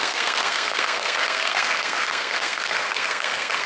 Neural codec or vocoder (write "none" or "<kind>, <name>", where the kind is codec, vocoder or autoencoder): codec, SNAC